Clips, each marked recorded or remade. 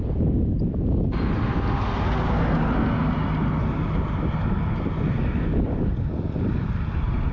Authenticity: recorded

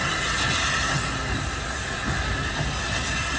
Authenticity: recorded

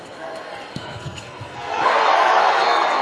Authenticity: remade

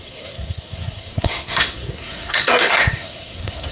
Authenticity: remade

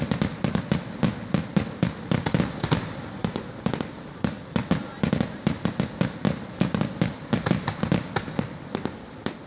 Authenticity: recorded